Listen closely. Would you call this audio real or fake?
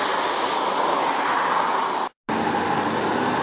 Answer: real